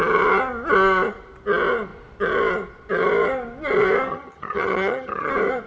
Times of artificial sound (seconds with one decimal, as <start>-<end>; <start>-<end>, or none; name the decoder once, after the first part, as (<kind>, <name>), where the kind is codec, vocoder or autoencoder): 4.1-5.3 (vocoder, HiFi-GAN)